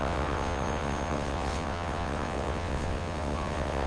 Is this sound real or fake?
fake